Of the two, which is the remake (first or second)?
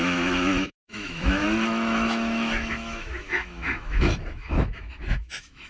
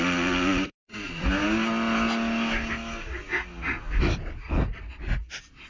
first